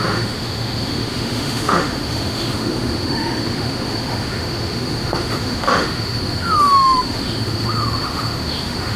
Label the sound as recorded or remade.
remade